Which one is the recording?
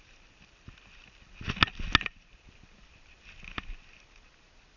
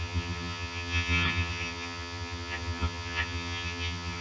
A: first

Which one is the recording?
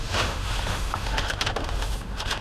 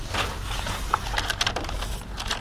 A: second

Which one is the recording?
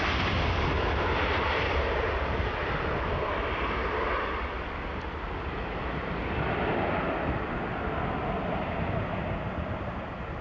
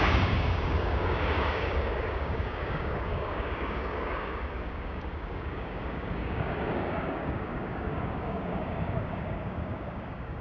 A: first